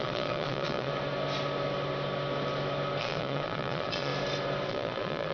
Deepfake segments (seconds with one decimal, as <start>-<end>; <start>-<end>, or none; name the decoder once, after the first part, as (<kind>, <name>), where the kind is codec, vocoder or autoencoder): 0.0-0.9 (vocoder, Vocos); 3.0-4.1; 4.7-5.3